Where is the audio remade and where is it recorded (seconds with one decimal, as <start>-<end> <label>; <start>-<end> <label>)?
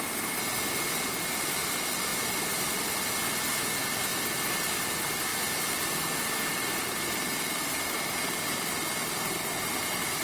0.0-2.1 recorded; 2.1-3.1 remade; 3.1-4.1 recorded; 4.1-4.8 remade; 4.8-5.3 recorded; 5.3-7.0 remade; 7.0-10.2 recorded